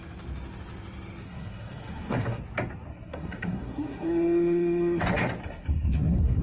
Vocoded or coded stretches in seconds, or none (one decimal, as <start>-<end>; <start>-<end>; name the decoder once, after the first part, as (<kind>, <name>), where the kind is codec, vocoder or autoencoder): 1.2-2.4 (codec, SNAC); 2.9-5.0; 5.4-6.4